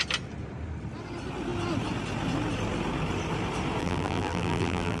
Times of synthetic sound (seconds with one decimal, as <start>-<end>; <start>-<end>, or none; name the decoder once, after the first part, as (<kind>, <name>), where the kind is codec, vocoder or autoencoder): 3.8-5.0 (vocoder, BigVGAN v2)